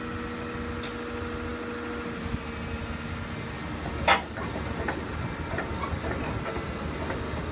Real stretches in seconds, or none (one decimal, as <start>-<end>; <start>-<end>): 0.0-7.5